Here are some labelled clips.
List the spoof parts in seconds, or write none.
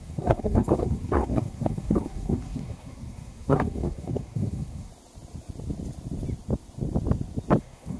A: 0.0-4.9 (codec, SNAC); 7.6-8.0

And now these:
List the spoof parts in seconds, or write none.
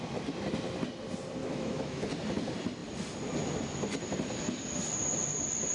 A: 1.4-2.1 (autoencoder, DAC-VAE)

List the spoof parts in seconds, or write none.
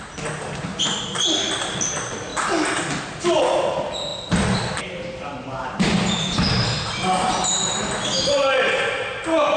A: none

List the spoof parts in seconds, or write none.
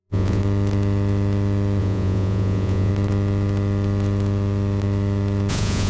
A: 0.0-0.4 (vocoder, Vocos); 1.8-2.9; 5.5-5.9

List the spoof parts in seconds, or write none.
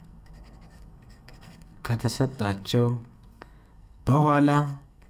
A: 0.0-5.1 (codec, SNAC)